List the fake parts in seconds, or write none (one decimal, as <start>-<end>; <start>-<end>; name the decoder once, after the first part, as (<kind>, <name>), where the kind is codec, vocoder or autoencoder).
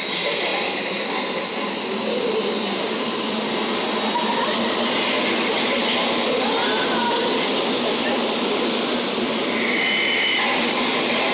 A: none